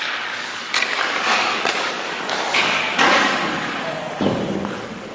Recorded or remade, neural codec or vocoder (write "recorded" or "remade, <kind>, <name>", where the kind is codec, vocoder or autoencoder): remade, codec, DAC